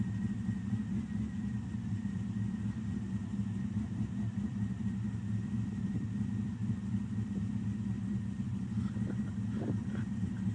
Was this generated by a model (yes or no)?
yes